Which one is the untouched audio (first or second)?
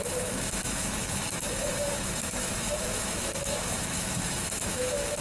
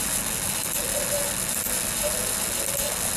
second